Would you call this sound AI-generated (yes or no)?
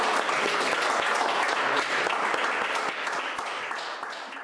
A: no